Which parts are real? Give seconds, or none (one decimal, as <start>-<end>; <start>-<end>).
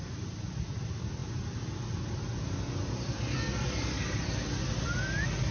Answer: 0.0-5.5